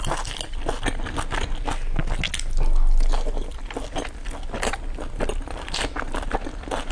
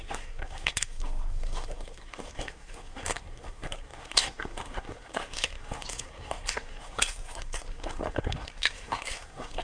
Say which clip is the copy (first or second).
second